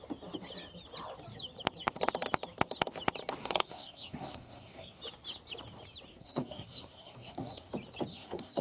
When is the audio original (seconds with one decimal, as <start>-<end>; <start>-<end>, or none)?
0.0-3.4; 5.0-6.1; 7.7-8.1